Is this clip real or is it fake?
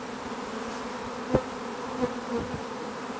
real